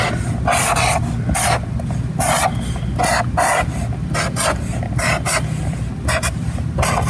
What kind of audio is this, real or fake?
real